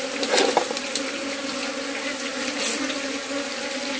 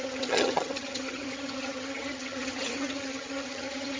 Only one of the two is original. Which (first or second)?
first